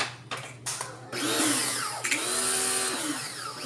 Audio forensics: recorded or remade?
recorded